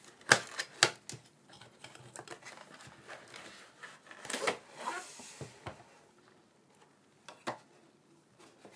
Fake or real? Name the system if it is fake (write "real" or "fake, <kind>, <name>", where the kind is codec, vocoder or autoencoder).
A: real